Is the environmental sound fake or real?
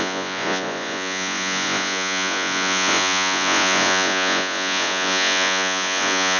fake